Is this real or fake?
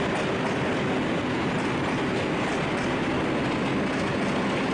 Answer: real